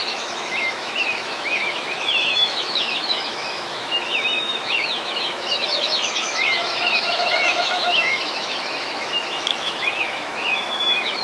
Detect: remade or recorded remade